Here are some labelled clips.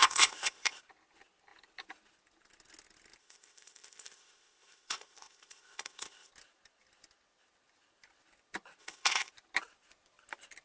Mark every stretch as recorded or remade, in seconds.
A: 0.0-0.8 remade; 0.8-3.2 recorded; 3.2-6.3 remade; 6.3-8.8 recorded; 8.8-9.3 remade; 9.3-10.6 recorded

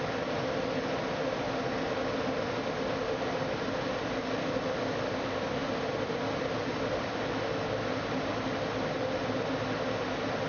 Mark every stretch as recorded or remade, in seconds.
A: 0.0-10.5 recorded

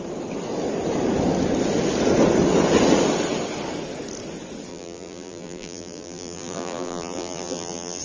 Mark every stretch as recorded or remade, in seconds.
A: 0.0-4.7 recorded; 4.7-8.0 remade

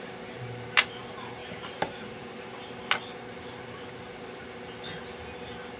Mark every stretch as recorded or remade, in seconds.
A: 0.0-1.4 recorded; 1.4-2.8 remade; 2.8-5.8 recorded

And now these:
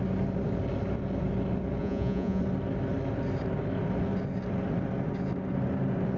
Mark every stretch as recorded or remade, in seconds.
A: 0.0-1.8 recorded; 1.8-2.4 remade; 2.4-6.2 recorded

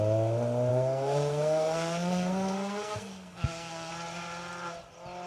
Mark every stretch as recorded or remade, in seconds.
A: 0.0-0.7 recorded; 0.7-3.9 remade; 3.9-5.3 recorded

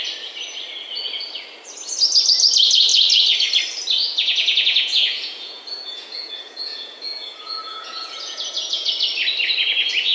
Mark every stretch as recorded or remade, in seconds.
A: 0.0-4.1 recorded; 4.1-8.9 remade; 8.9-10.1 recorded

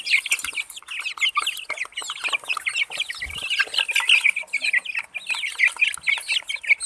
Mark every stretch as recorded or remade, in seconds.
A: 0.0-6.9 recorded